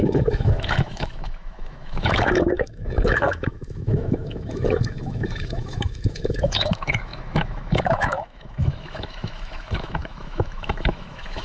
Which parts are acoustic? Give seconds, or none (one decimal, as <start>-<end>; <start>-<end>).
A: none